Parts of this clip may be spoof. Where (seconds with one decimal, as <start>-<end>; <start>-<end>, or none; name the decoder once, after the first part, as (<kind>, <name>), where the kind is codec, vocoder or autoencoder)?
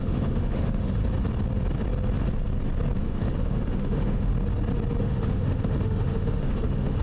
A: 0.0-1.0 (autoencoder, DAC-VAE); 3.0-4.3; 5.0-7.0